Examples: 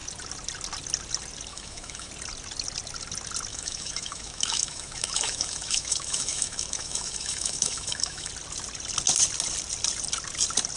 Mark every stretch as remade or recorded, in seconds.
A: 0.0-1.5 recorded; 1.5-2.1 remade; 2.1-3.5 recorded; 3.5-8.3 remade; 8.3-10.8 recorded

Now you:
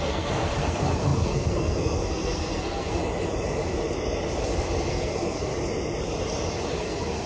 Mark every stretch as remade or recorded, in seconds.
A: 0.0-3.0 remade; 3.0-4.9 recorded; 4.9-5.5 remade; 5.5-6.8 recorded; 6.8-7.3 remade

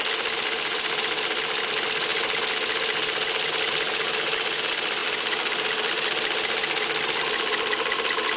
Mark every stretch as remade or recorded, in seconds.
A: 0.0-8.4 recorded